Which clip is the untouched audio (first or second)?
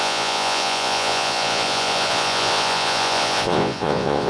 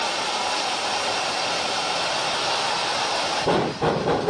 second